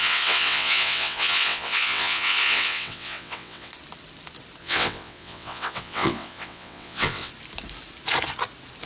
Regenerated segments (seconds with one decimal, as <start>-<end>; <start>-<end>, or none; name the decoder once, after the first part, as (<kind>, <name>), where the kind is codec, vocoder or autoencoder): 0.0-3.7 (vocoder, WaveNeXt); 4.6-7.3